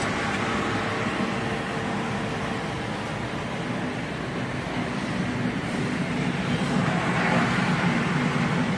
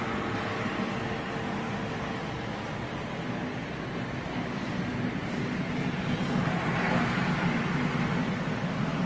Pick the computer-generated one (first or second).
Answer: first